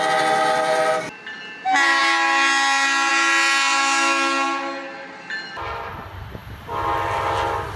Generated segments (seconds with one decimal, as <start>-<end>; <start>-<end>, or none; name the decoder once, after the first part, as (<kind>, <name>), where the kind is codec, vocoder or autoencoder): none